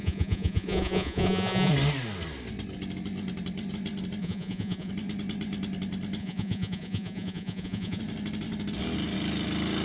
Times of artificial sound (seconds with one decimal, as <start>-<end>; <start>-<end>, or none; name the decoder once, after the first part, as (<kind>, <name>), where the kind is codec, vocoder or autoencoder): 0.0-1.7 (vocoder, Vocos); 4.2-4.9; 6.2-8.0